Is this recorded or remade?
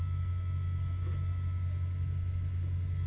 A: recorded